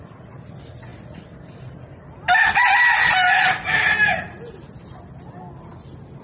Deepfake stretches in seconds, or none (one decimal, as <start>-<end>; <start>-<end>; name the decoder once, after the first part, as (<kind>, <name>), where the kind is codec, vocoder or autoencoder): none